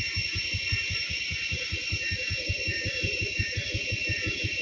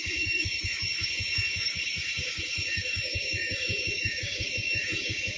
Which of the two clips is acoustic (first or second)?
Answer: first